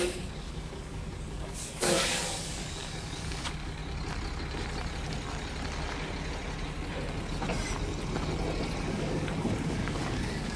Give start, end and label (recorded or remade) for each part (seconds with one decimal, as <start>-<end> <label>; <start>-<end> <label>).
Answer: 0.0-3.8 remade; 3.8-8.9 recorded; 8.9-10.6 remade